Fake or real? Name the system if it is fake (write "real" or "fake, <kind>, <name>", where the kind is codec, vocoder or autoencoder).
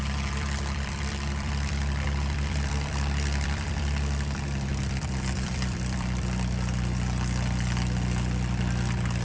fake, vocoder, BigVGAN v2